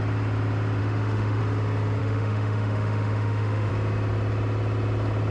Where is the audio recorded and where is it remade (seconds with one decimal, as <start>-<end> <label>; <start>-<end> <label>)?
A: 0.0-0.8 recorded; 0.8-1.4 remade; 1.4-2.0 recorded; 2.0-3.7 remade; 3.7-5.3 recorded